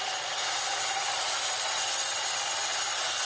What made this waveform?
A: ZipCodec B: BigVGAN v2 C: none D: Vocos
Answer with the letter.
C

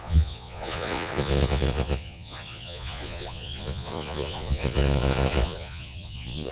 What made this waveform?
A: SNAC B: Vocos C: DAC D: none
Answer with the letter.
B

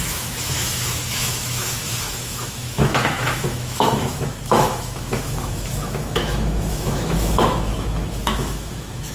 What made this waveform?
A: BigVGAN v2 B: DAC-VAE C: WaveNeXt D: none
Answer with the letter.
B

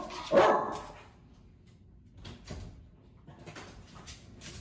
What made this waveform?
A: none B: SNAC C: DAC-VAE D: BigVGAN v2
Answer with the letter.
A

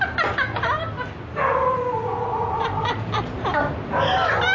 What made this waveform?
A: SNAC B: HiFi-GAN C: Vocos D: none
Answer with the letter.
D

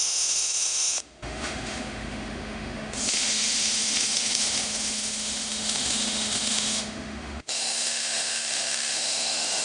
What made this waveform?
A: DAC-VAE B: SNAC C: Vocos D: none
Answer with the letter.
A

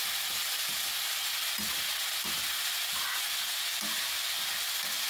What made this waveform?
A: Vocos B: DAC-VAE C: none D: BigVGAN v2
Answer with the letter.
C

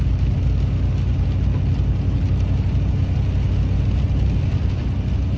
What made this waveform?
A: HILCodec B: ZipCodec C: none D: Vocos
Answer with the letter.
C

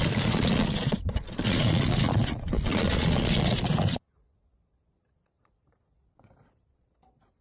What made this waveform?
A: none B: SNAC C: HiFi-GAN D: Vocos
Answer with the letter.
D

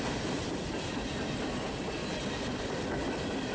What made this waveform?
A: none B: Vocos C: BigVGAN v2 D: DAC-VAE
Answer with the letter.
C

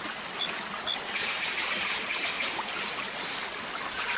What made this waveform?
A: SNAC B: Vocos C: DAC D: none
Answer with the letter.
D